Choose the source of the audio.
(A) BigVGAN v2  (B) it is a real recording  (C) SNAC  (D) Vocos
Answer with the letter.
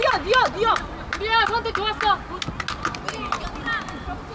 B